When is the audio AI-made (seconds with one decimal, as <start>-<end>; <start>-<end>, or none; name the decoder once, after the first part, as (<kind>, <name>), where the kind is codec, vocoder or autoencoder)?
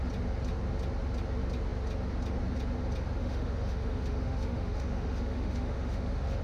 3.2-6.4 (autoencoder, DAC-VAE)